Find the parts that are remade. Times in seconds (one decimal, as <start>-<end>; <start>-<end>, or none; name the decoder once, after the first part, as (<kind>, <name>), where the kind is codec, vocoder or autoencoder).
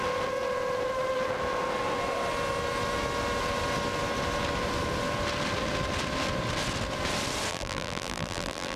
7.5-8.8 (vocoder, BigVGAN v2)